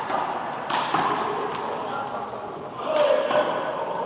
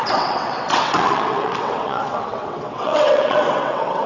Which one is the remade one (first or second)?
second